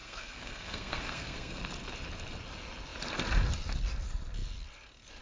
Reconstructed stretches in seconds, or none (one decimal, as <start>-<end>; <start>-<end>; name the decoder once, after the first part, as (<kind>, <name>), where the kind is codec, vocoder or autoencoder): 0.0-1.6 (codec, SNAC)

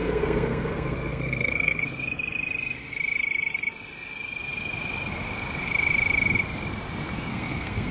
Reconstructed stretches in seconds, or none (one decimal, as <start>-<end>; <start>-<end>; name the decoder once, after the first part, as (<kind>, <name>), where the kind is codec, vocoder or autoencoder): 0.0-1.8 (codec, SNAC); 7.3-7.9

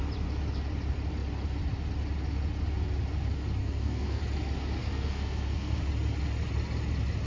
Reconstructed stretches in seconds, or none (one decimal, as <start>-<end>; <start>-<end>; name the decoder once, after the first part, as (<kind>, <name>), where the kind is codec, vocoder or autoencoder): 3.6-4.2 (codec, SNAC); 4.8-5.8

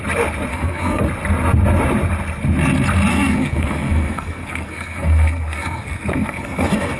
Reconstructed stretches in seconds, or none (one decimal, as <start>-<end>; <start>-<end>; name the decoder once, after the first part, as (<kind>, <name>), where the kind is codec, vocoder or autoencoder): 0.5-1.0 (codec, SNAC); 3.1-7.0

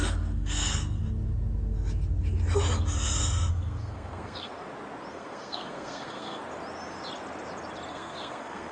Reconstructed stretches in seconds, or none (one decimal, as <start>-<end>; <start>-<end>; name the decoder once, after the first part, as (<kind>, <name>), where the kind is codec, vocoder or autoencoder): 0.0-1.0 (codec, SNAC); 3.5-4.5; 5.1-6.4; 7.9-8.7

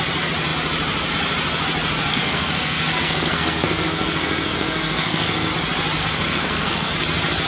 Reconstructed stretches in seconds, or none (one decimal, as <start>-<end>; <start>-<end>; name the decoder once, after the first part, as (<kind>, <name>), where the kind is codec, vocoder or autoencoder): 2.1-5.5 (codec, SNAC); 6.0-6.9

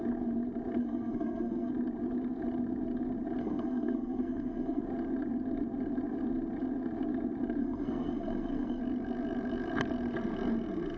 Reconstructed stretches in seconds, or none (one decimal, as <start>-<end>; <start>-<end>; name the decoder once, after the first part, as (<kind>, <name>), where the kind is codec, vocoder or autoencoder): 0.8-1.7 (codec, SNAC); 3.4-4.8; 7.6-8.8